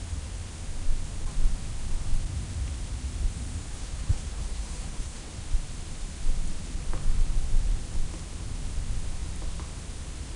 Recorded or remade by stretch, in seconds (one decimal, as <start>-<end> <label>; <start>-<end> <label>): 0.0-3.7 recorded; 3.7-5.3 remade; 5.3-10.4 recorded